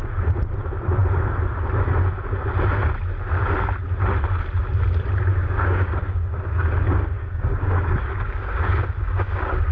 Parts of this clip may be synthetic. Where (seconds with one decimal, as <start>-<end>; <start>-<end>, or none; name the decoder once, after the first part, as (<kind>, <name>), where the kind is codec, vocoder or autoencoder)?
5.3-9.7 (codec, DAC)